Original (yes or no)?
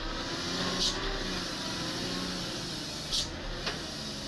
yes